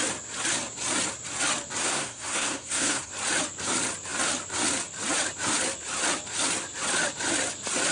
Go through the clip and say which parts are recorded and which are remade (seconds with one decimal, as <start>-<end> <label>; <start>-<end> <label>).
0.0-1.8 recorded; 1.8-3.1 remade; 3.1-7.9 recorded